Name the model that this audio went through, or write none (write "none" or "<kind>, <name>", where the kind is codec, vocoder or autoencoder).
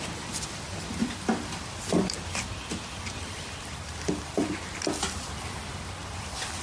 vocoder, BigVGAN v2